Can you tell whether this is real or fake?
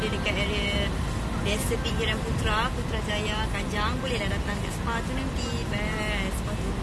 real